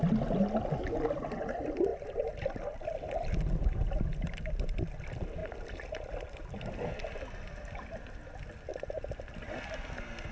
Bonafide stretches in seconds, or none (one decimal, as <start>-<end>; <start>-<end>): 0.0-8.7; 9.3-10.3